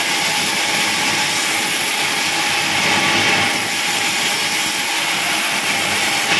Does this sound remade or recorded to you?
recorded